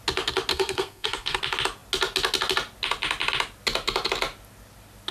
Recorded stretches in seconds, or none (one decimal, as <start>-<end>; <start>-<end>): 0.0-0.5; 1.4-5.1